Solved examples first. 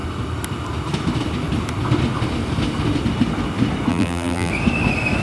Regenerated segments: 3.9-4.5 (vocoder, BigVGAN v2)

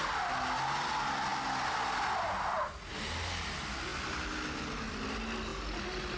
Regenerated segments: none

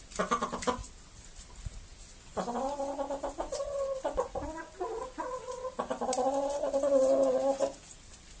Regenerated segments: none